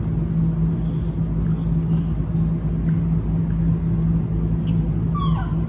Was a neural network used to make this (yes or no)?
no